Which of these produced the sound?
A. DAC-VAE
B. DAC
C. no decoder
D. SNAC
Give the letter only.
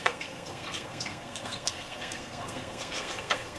D